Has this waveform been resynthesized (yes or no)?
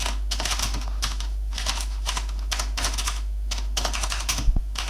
yes